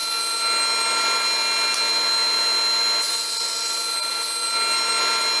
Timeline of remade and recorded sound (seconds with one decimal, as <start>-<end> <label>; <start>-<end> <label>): 0.0-5.4 recorded

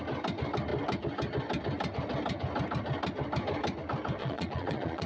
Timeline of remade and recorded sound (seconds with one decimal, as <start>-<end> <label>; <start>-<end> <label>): 0.0-4.2 recorded; 4.2-5.1 remade

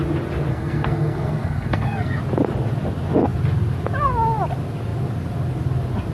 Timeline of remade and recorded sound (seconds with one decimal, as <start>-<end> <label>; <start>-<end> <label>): 0.0-0.5 recorded; 0.5-2.2 remade; 2.2-6.1 recorded